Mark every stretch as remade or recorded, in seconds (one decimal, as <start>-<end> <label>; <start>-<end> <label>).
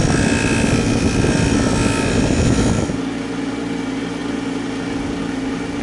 0.0-5.8 recorded